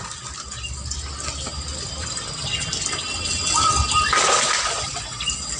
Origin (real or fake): real